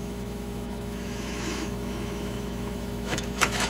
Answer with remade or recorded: remade